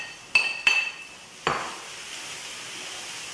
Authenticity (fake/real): real